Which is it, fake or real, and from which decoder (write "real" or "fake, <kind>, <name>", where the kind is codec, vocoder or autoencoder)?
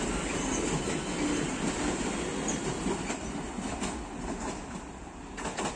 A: real